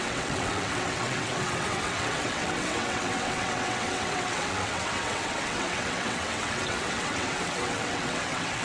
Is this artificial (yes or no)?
yes